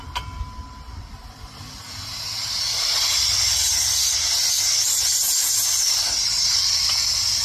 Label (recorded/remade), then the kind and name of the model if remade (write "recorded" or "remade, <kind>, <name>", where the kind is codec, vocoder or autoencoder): recorded